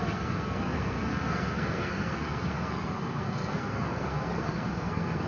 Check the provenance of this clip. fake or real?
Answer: fake